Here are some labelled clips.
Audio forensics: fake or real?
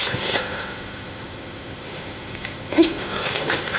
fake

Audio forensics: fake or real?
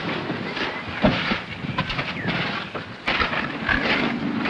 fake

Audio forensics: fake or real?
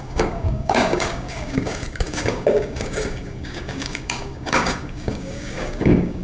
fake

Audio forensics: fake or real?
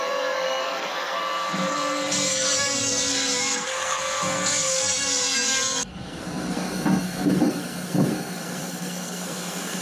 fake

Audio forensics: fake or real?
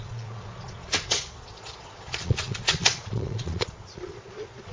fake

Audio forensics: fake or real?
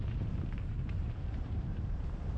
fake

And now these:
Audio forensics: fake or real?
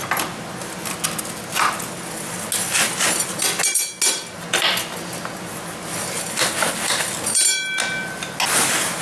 real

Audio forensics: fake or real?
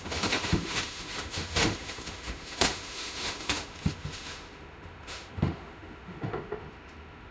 fake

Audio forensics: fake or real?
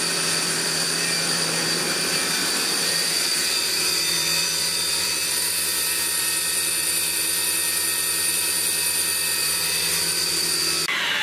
fake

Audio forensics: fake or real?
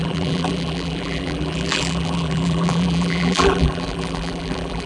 fake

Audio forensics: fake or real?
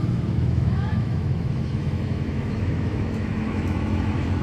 fake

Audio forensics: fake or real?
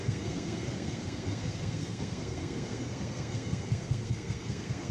fake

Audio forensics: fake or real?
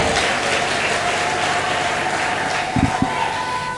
real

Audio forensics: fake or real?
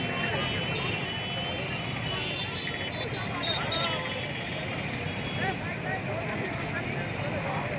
real